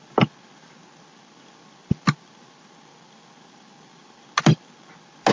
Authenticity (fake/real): real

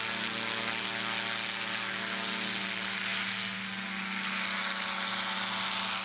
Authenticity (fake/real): real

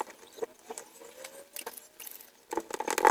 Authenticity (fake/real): real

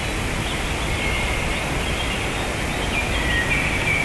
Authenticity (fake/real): real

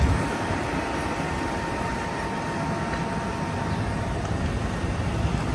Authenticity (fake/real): real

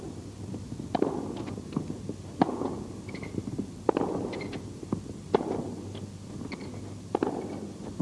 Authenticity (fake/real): real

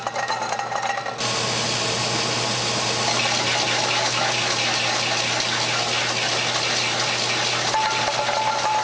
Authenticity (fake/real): real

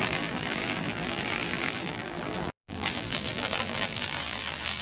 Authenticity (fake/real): fake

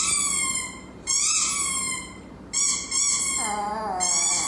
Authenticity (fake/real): real